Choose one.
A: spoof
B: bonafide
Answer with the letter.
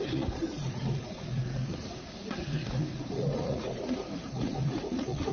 A